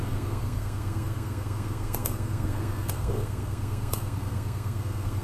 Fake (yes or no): yes